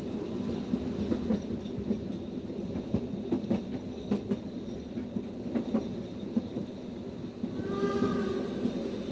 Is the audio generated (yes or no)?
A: no